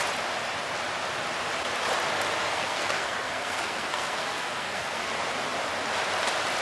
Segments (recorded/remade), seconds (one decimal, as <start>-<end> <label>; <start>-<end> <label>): 0.0-2.4 recorded; 2.4-5.1 remade; 5.1-6.6 recorded